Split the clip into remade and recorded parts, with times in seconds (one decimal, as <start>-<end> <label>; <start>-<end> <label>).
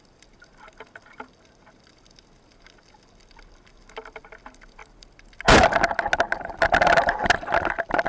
0.0-8.1 recorded